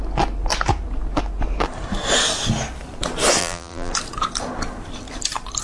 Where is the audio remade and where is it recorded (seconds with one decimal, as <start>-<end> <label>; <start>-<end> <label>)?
0.0-3.4 recorded; 3.4-3.9 remade; 3.9-5.6 recorded